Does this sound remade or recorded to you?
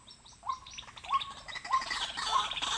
remade